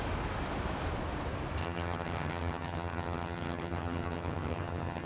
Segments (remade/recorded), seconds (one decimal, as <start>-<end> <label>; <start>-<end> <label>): 0.0-1.6 recorded; 1.6-5.1 remade